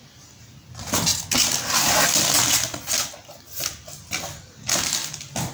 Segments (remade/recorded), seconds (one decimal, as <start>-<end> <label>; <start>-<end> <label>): 0.0-5.5 recorded